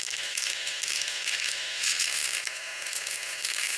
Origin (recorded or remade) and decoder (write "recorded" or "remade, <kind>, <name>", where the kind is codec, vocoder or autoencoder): remade, autoencoder, DAC-VAE